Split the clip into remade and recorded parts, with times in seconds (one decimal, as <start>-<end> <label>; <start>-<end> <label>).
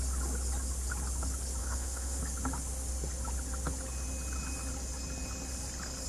0.0-1.6 recorded; 1.6-2.2 remade; 2.2-6.1 recorded